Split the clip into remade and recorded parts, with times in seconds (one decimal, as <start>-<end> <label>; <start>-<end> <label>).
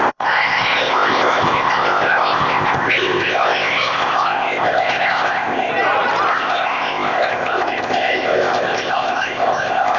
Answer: 0.0-5.7 remade; 5.7-6.3 recorded; 6.3-10.0 remade